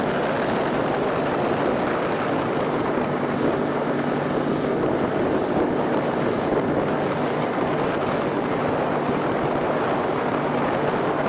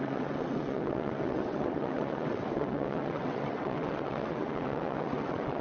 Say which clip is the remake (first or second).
second